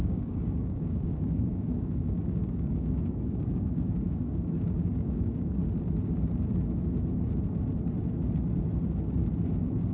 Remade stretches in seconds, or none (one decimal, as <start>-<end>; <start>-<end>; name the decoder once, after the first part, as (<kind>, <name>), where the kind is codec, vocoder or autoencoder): 0.0-5.6 (codec, DAC)